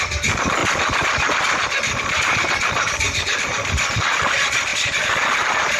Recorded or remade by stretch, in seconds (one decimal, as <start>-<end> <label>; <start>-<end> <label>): 0.0-0.6 recorded; 0.6-4.0 remade; 4.0-4.7 recorded; 4.7-5.8 remade